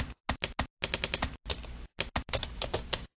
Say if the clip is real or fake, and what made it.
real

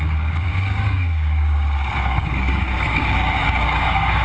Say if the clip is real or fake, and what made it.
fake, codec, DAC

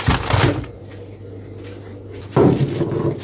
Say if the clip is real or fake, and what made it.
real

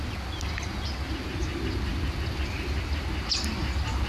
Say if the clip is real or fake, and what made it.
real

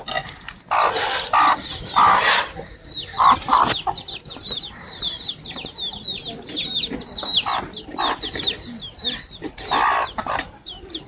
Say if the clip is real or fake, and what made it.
real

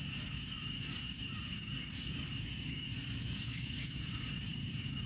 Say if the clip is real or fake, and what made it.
fake, codec, DAC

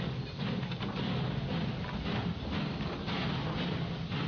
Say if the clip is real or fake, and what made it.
real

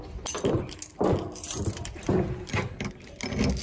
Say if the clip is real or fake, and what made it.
real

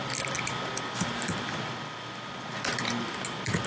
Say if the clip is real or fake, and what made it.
real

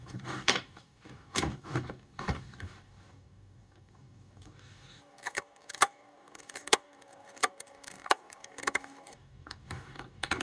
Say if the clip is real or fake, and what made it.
fake, codec, DAC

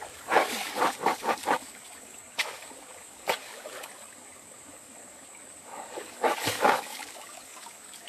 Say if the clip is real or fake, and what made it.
fake, codec, DAC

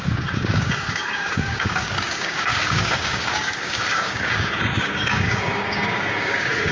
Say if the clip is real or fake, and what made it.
fake, codec, DAC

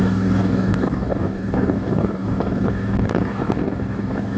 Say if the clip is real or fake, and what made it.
fake, codec, DAC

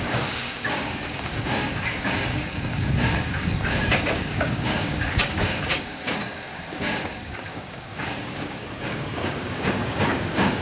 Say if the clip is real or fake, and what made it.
fake, codec, DAC